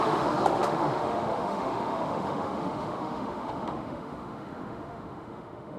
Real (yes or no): no